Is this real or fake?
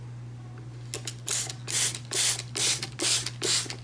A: real